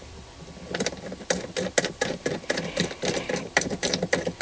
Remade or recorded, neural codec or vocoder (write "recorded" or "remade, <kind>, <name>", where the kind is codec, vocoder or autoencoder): remade, vocoder, BigVGAN v2